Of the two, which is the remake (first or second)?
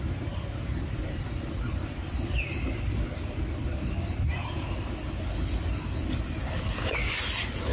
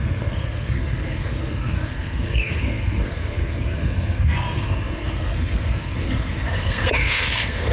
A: second